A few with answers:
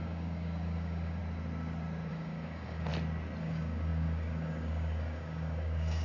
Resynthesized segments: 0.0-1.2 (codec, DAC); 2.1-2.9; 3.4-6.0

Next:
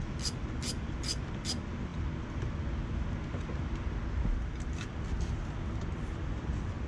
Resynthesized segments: none

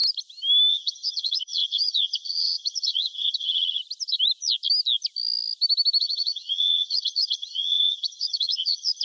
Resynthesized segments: 0.7-3.8 (vocoder, HiFi-GAN); 6.0-9.0

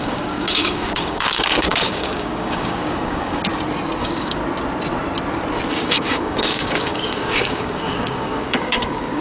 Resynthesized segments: 0.0-3.4 (codec, DAC); 4.0-4.4; 5.7-9.2